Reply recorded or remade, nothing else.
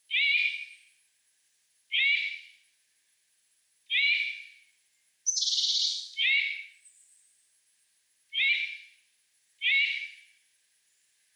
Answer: recorded